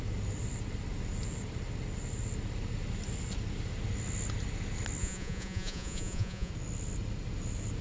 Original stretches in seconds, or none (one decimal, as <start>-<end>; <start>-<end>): 0.0-5.0; 6.5-7.8